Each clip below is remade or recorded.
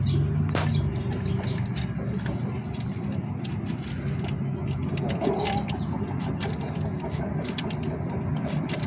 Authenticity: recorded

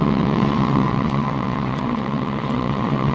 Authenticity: remade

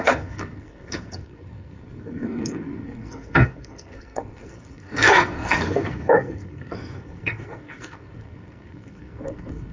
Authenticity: remade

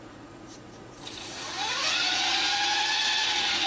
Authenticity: remade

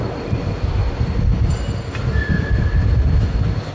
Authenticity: remade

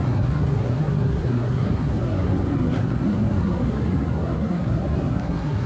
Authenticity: remade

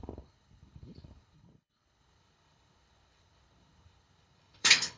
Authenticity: remade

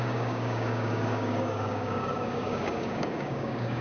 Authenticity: remade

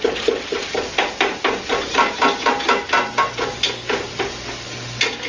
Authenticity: recorded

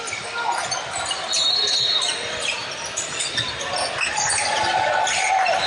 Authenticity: recorded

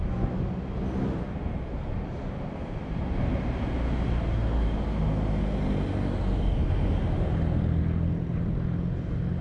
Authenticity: recorded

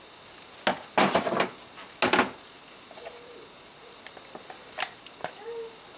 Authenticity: recorded